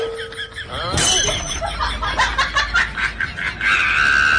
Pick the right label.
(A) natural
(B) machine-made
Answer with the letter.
A